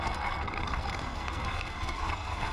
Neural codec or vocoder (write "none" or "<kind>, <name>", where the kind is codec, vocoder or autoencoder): codec, SNAC